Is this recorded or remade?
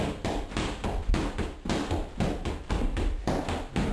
recorded